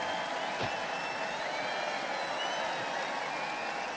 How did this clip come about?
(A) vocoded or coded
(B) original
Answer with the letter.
B